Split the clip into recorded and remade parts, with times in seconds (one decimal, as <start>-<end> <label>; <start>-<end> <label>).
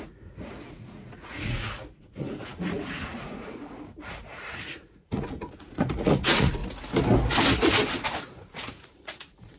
0.0-6.6 remade; 6.6-8.2 recorded; 8.2-9.6 remade